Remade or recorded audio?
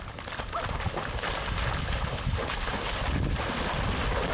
recorded